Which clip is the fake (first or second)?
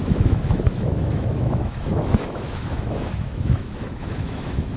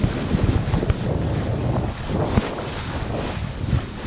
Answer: first